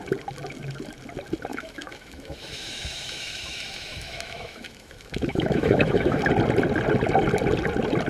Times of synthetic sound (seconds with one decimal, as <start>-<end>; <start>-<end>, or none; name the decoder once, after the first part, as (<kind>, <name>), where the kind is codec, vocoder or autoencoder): 1.5-6.2 (autoencoder, DAC-VAE)